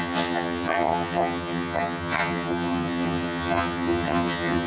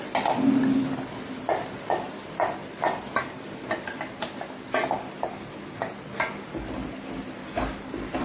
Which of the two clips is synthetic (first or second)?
first